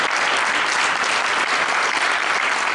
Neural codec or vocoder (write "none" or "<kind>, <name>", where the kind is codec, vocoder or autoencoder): none